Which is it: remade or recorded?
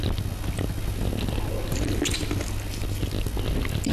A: recorded